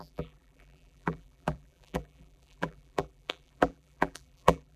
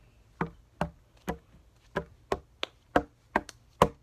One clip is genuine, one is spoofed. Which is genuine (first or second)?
second